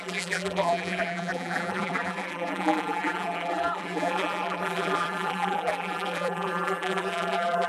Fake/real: fake